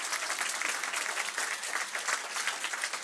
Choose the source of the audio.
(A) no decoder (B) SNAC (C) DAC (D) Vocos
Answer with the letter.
A